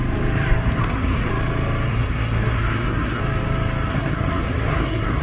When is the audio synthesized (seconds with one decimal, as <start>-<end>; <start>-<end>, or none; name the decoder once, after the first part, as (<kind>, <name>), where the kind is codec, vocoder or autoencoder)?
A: 0.8-1.3 (codec, SNAC); 1.9-3.2; 3.9-5.2